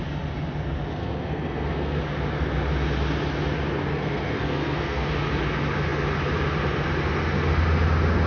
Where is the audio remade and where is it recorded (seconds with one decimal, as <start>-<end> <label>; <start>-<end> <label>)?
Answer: 0.0-0.9 recorded; 0.9-2.0 remade; 2.0-3.9 recorded; 3.9-5.1 remade; 5.1-8.3 recorded